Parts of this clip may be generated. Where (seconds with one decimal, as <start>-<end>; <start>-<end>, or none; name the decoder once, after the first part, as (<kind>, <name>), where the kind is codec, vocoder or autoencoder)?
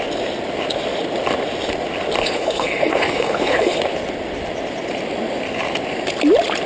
2.2-3.8 (codec, HILCodec)